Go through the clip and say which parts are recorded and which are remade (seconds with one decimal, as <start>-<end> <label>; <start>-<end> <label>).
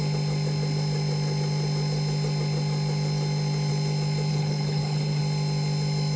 0.0-4.3 recorded; 4.3-5.2 remade; 5.2-6.2 recorded